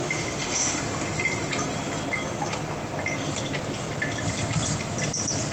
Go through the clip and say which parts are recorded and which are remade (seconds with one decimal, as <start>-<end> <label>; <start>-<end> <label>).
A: 0.0-0.8 remade; 0.8-5.5 recorded

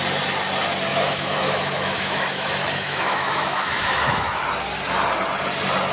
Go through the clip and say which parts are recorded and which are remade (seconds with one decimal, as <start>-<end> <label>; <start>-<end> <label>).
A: 0.0-0.9 recorded; 0.9-4.4 remade; 4.4-5.9 recorded

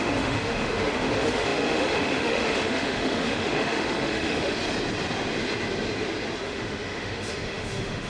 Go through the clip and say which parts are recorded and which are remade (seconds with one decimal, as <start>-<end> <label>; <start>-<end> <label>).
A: 0.0-4.6 remade; 4.6-6.4 recorded; 6.4-8.1 remade

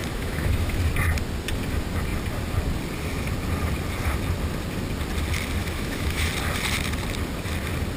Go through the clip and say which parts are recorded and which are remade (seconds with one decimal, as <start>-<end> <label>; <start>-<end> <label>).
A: 0.0-0.8 remade; 0.8-5.6 recorded; 5.6-6.3 remade; 6.3-8.0 recorded

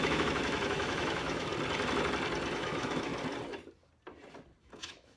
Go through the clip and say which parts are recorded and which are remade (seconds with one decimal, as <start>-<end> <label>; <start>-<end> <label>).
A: 0.0-1.5 remade; 1.5-2.5 recorded; 2.5-3.1 remade; 3.1-4.6 recorded; 4.6-5.2 remade

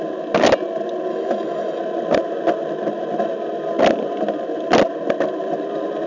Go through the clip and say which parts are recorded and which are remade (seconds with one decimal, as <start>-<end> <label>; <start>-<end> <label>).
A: 0.0-1.1 recorded; 1.1-1.8 remade; 1.8-6.1 recorded

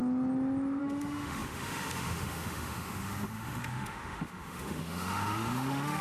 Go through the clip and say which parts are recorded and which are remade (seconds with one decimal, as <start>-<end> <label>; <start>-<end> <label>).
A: 0.0-0.8 recorded; 0.8-6.0 remade

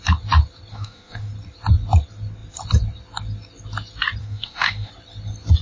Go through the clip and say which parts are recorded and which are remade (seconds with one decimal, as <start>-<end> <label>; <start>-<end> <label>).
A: 0.0-0.7 recorded; 0.7-1.3 remade; 1.3-4.2 recorded; 4.2-4.9 remade; 4.9-5.6 recorded